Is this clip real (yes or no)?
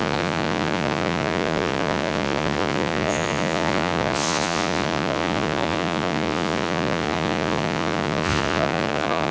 no